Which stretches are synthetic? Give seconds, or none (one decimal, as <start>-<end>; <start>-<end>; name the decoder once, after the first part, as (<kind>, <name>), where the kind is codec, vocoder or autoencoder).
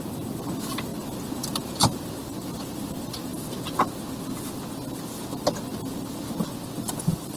0.0-0.9 (vocoder, BigVGAN v2); 1.7-3.3; 6.9-7.4